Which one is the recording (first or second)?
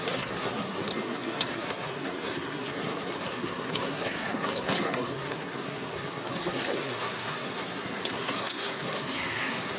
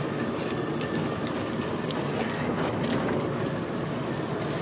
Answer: second